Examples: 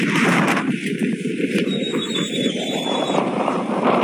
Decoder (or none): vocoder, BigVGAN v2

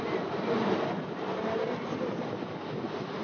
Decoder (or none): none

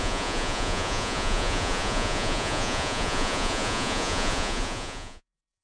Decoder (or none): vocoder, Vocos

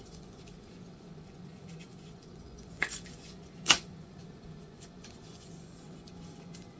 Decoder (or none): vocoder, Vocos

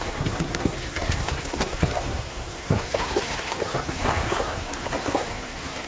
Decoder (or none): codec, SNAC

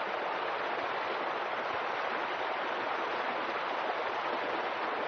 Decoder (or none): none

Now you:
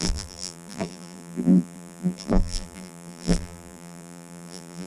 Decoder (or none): vocoder, BigVGAN v2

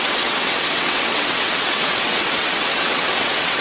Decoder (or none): vocoder, WaveNeXt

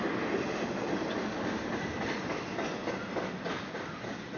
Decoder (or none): none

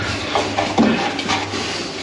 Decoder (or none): none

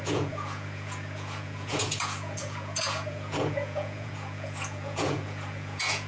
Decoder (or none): vocoder, Vocos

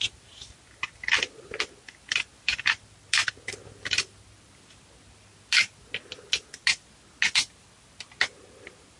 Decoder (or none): none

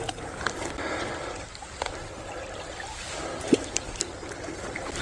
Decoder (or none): none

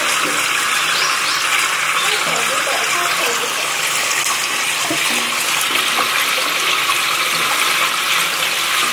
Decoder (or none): none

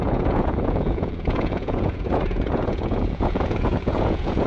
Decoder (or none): vocoder, Vocos